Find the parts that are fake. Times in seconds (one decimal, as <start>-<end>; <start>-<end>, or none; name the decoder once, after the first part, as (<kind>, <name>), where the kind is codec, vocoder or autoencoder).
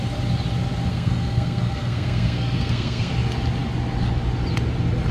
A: 0.9-3.1 (codec, SNAC)